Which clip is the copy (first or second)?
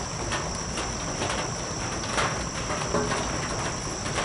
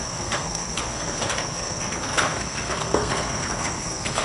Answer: second